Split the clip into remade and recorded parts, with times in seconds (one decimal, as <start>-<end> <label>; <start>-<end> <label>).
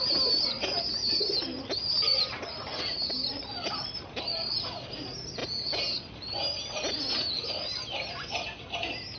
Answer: 0.0-9.2 recorded